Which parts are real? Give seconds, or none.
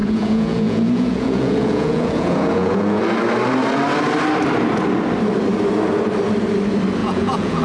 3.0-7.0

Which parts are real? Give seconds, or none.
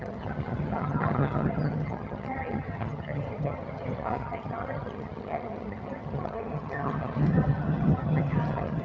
none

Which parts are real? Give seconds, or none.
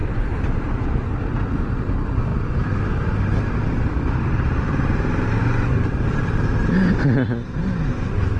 0.0-8.4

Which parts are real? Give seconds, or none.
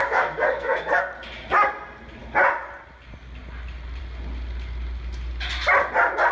1.1-6.3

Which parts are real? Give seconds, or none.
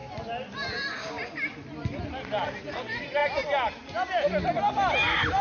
0.0-5.4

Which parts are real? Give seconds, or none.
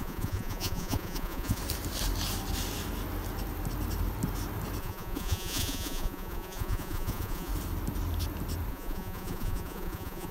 1.6-4.8; 7.5-8.7